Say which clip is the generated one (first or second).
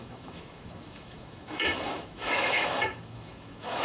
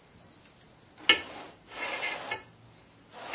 first